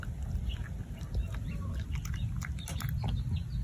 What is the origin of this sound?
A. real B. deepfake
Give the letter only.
A